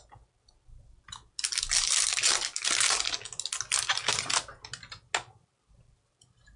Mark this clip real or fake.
real